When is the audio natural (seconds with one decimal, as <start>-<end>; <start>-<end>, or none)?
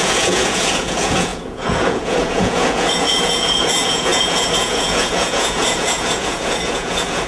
none